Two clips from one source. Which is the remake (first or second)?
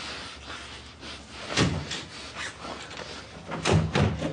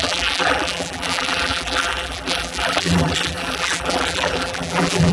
second